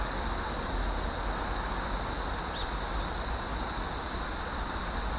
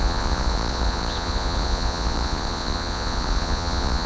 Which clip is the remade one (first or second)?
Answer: second